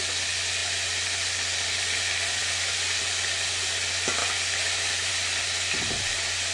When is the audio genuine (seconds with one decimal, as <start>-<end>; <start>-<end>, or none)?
0.0-6.5